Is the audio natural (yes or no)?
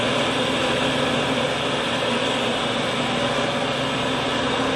yes